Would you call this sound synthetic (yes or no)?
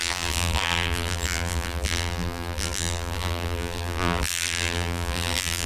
yes